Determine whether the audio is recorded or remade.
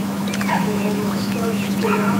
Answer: remade